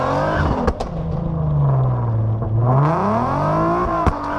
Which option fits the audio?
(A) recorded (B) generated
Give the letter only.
A